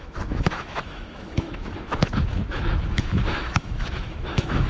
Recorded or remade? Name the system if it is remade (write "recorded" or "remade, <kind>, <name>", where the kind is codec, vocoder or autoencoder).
remade, autoencoder, DAC-VAE